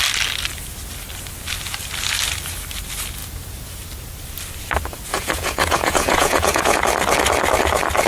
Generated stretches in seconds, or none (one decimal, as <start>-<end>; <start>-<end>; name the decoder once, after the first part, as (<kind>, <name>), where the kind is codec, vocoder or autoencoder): 5.1-6.8 (vocoder, Vocos)